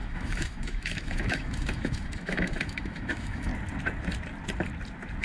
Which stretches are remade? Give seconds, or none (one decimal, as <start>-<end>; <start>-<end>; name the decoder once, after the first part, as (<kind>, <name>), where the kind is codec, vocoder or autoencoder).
0.0-3.5 (autoencoder, DAC-VAE)